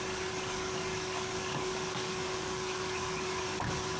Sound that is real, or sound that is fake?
fake